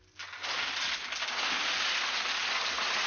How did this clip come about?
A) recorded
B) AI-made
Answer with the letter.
A